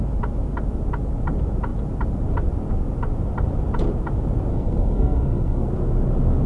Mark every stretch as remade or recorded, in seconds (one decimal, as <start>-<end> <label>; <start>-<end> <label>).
0.0-4.5 recorded; 4.5-5.7 remade; 5.7-6.5 recorded